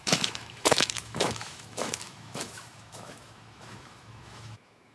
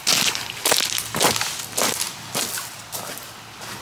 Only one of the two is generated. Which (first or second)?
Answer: first